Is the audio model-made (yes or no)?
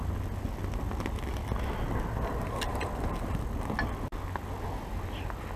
no